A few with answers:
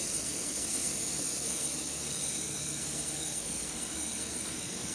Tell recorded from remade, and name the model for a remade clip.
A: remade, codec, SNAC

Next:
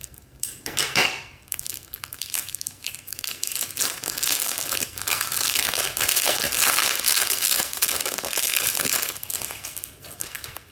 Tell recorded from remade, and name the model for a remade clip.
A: remade, codec, SNAC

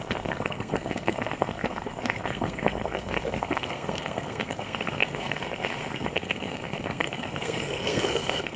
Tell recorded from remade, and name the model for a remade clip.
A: remade, codec, SNAC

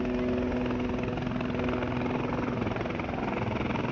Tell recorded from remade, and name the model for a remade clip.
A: recorded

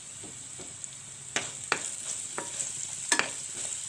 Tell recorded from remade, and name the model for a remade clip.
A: recorded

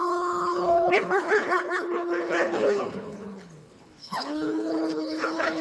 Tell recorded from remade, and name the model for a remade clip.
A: remade, codec, HILCodec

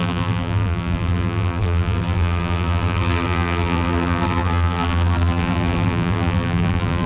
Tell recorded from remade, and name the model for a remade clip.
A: remade, vocoder, BigVGAN v2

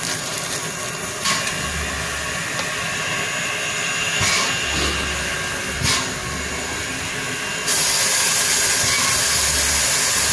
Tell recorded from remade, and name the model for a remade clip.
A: recorded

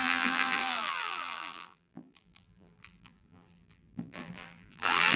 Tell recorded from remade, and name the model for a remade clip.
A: remade, vocoder, BigVGAN v2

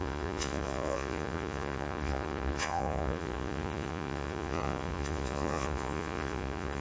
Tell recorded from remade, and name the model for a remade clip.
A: remade, vocoder, Vocos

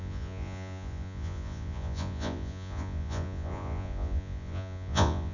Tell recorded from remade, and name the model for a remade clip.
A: remade, vocoder, Vocos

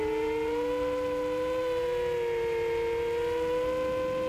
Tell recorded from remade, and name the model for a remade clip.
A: recorded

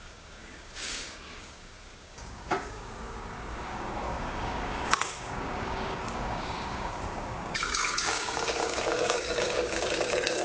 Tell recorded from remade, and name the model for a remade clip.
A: remade, codec, DAC